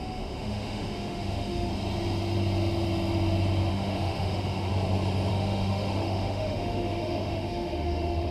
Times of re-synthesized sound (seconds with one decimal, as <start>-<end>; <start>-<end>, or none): 0.0-1.7; 3.7-4.7; 5.3-8.3